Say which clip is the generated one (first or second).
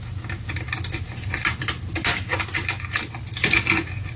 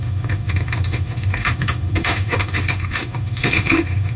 second